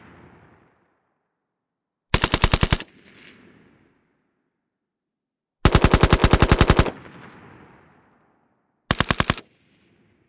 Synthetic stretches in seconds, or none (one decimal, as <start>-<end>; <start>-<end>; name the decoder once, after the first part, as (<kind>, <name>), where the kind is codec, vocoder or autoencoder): none